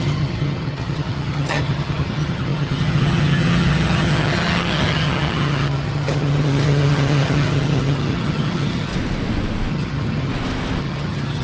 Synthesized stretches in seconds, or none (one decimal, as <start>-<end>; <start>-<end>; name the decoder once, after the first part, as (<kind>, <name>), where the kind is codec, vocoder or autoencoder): 0.0-8.9 (vocoder, HiFi-GAN); 9.7-10.3; 10.8-11.4